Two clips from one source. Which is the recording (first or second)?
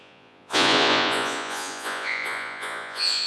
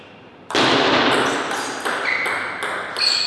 second